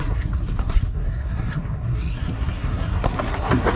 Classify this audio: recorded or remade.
remade